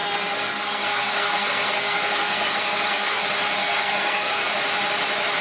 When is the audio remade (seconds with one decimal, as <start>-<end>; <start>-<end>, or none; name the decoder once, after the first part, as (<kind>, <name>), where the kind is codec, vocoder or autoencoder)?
0.0-3.2 (codec, SNAC); 3.6-4.5